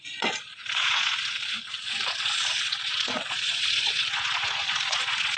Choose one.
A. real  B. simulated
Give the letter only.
B